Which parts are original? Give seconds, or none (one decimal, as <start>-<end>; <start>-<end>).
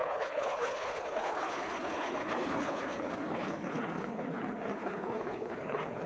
none